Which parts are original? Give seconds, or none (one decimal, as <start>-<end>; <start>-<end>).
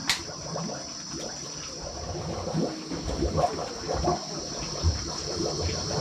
0.0-6.0